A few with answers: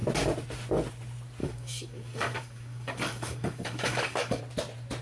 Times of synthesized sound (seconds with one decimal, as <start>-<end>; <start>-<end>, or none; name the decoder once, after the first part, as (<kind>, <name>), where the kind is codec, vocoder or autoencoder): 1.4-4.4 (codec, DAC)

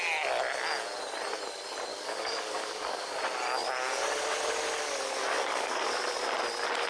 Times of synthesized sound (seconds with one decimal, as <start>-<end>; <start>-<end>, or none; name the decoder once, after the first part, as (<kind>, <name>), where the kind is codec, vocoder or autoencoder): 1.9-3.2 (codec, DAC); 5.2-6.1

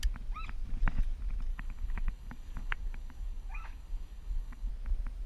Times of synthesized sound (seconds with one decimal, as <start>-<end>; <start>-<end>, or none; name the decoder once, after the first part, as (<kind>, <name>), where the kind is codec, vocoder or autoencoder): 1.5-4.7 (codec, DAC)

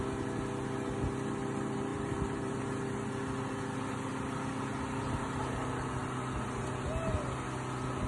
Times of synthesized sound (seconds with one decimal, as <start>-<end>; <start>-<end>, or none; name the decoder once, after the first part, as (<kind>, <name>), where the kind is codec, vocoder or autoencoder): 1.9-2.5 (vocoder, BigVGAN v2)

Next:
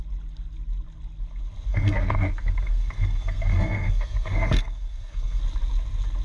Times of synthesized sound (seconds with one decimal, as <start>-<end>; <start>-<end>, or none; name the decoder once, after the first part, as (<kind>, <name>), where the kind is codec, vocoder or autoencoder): 1.7-5.4 (codec, SNAC)

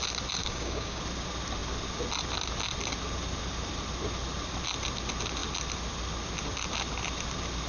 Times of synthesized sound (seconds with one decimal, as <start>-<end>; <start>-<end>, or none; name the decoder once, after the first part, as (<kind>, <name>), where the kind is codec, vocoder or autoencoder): 0.4-1.0 (codec, DAC)